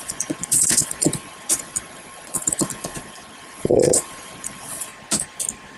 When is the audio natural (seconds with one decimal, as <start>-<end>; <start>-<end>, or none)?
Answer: 4.9-5.8